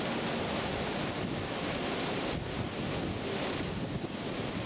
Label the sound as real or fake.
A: real